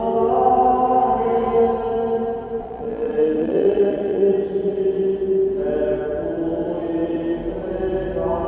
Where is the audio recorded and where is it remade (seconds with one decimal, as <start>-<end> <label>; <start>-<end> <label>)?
0.0-2.6 recorded; 2.6-4.3 remade; 4.3-8.5 recorded